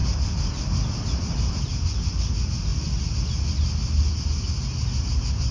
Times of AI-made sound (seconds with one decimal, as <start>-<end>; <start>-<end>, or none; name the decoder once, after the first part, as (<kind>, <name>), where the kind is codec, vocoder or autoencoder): 0.0-1.5 (vocoder, BigVGAN v2)